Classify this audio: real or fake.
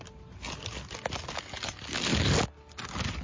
real